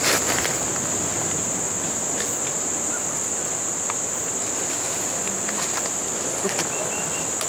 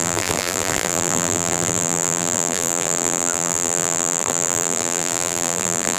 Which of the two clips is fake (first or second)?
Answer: second